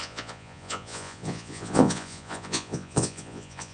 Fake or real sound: fake